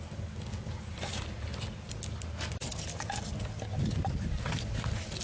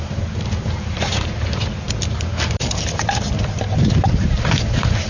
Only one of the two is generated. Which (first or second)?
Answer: second